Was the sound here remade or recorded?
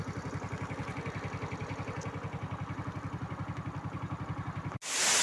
recorded